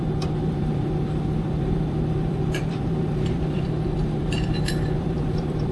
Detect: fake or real fake